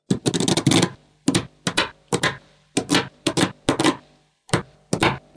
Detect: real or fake real